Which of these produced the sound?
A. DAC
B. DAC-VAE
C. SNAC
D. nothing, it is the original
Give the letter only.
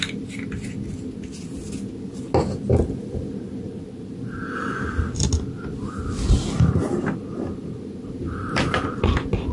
D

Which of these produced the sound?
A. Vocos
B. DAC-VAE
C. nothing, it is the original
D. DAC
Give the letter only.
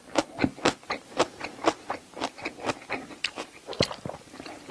C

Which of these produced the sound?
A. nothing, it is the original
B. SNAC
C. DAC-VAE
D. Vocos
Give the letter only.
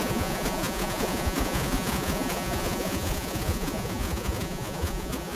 D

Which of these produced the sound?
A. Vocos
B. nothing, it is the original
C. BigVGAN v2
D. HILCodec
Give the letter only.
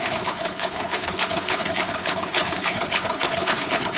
D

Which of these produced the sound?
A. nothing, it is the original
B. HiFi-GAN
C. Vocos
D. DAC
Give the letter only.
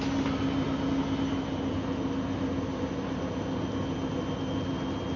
A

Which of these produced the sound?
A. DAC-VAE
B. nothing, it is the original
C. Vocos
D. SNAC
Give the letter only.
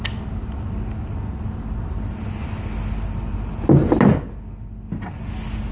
B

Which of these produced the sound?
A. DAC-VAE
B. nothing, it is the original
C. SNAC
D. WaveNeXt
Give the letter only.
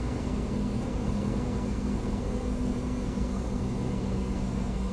C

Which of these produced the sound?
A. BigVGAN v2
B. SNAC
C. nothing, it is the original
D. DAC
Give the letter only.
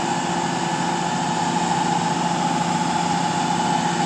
C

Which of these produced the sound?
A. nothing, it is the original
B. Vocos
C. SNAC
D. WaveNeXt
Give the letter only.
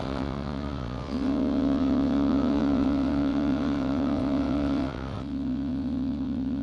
D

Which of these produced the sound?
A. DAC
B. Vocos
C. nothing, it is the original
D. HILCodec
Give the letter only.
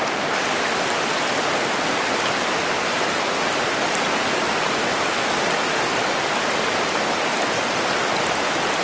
C